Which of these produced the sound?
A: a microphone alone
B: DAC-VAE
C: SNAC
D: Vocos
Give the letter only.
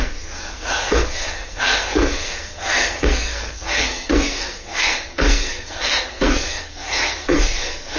C